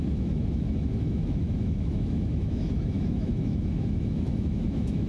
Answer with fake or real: fake